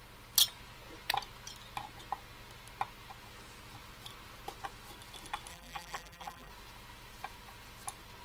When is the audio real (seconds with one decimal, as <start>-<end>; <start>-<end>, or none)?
0.0-5.5; 6.5-8.2